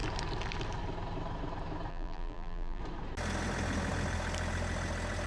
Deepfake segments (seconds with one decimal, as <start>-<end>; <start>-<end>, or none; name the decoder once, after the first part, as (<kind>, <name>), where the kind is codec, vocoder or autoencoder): 1.9-2.8 (vocoder, BigVGAN v2)